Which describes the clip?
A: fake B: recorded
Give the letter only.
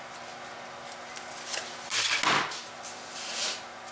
B